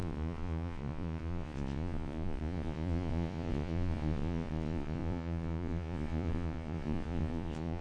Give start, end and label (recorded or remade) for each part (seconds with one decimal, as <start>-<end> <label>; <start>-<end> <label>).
0.0-7.8 remade